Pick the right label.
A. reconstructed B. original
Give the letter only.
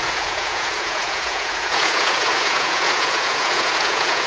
A